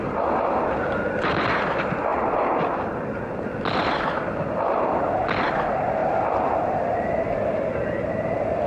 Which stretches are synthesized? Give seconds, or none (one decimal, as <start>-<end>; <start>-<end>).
none